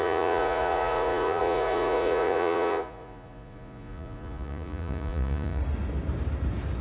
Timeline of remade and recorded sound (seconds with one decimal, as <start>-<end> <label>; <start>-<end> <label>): 0.0-5.6 remade; 5.6-6.8 recorded